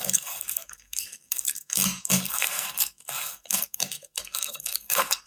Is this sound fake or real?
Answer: fake